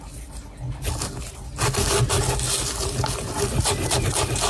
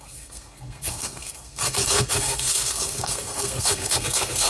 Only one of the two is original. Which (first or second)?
first